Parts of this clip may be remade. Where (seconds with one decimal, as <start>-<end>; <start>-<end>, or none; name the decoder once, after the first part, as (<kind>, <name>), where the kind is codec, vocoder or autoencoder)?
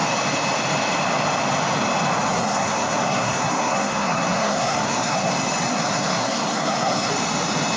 2.3-5.3 (codec, SNAC); 5.7-7.1